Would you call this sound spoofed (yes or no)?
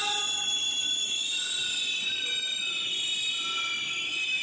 no